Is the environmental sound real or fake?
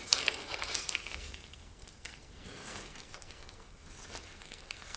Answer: fake